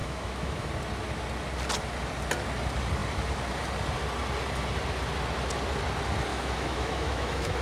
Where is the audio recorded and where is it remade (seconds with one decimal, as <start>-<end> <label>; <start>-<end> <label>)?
0.0-0.7 remade; 0.7-6.3 recorded; 6.3-7.6 remade